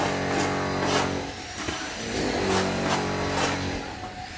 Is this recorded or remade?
recorded